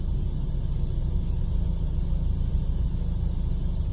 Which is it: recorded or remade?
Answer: recorded